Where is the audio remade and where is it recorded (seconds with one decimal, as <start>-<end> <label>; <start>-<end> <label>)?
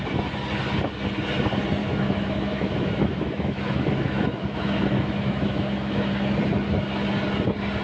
0.0-1.8 recorded; 1.8-6.1 remade; 6.1-7.8 recorded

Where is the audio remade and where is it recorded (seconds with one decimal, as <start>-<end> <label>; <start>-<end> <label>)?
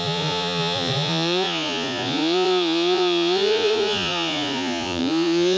0.0-5.6 remade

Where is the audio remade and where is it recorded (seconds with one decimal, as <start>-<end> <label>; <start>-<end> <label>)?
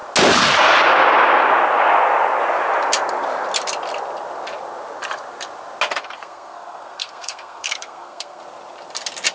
0.0-6.0 recorded; 6.0-8.4 remade; 8.4-9.3 recorded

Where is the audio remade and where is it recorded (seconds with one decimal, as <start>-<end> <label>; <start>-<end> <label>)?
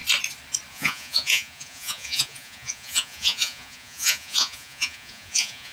0.0-0.7 recorded; 0.7-5.7 remade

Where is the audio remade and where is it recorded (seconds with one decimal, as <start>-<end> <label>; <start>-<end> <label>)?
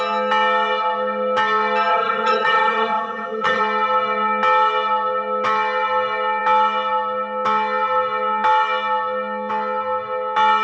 0.0-1.9 recorded; 1.9-3.6 remade; 3.6-10.6 recorded